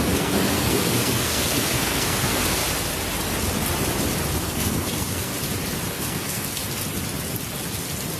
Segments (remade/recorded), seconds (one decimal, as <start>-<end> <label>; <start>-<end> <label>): 0.0-2.6 remade; 2.6-4.4 recorded; 4.4-5.3 remade; 5.3-5.9 recorded; 5.9-6.6 remade; 6.6-8.2 recorded